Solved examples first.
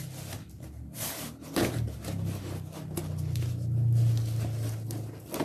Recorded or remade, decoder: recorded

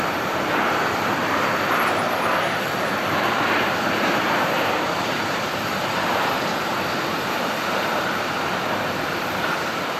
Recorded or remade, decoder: remade, vocoder, BigVGAN v2